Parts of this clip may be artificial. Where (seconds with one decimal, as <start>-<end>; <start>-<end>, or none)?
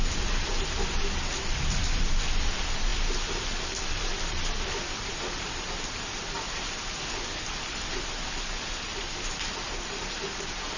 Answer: none